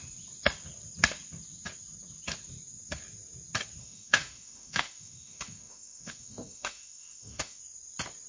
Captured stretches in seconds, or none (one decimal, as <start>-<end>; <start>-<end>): 0.0-3.8; 7.6-8.3